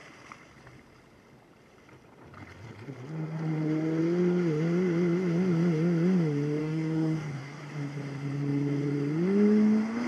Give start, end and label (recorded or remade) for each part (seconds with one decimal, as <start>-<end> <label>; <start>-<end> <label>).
0.0-6.6 recorded; 6.6-7.6 remade; 7.6-10.1 recorded